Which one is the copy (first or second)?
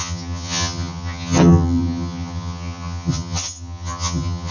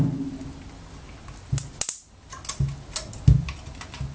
first